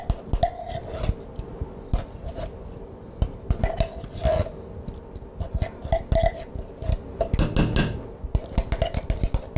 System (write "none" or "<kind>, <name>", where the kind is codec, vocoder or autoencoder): none